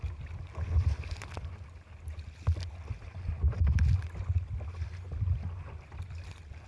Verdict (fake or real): real